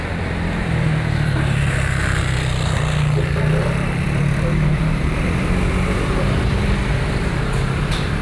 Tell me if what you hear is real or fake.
fake